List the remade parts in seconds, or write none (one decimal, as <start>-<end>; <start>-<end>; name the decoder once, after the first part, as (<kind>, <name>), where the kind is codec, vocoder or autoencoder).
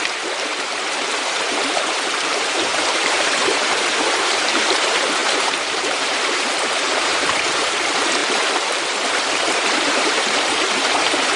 0.0-8.2 (vocoder, BigVGAN v2); 9.1-11.4